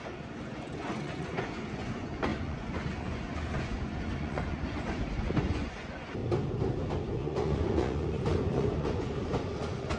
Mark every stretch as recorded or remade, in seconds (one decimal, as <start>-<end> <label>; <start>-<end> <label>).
0.0-6.2 remade; 6.2-7.1 recorded; 7.1-10.0 remade